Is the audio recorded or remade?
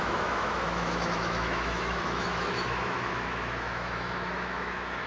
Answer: remade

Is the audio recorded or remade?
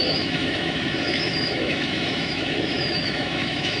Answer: remade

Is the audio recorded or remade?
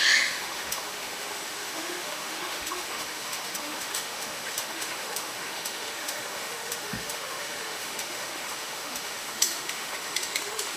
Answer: remade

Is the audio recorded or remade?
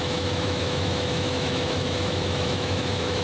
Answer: remade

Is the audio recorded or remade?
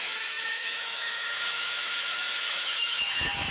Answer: remade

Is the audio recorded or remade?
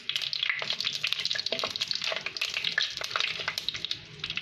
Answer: recorded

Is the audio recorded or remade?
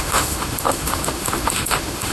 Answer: remade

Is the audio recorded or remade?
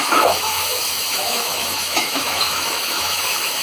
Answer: remade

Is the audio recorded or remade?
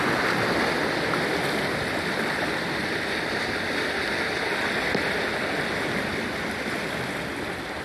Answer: recorded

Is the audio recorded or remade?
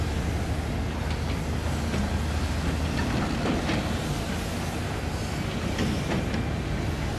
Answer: recorded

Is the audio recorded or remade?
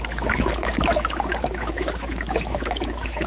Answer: remade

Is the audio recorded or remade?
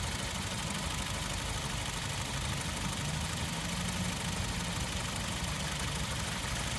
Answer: recorded